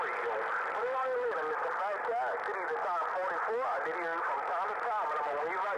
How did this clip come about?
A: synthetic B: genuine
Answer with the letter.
B